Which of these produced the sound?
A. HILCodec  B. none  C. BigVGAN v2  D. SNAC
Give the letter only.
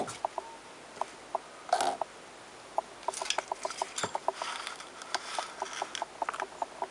B